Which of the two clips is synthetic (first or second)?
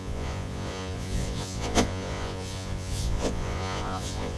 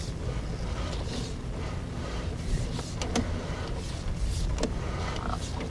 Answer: first